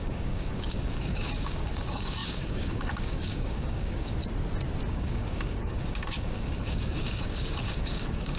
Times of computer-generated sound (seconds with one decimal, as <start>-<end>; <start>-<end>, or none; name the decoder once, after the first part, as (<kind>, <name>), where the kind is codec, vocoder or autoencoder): 0.0-4.2 (codec, DAC); 4.9-8.4

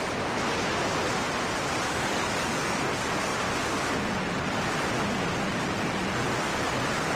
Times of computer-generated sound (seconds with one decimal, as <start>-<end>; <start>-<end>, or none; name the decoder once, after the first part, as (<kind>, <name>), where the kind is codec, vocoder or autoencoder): 1.9-2.8 (codec, DAC)

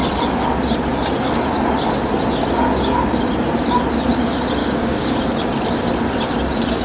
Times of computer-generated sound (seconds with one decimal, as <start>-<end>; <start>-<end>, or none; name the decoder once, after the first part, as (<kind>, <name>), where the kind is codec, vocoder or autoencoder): 4.6-5.2 (codec, DAC)